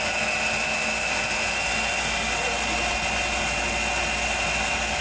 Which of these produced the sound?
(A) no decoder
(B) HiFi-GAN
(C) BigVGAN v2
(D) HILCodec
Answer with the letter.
A